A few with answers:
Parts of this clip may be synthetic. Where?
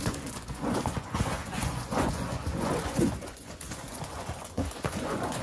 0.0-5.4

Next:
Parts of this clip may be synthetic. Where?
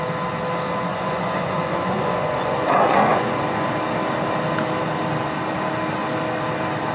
0.9-3.7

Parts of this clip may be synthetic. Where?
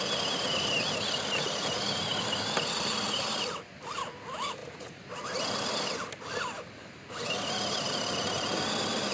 4.6-5.1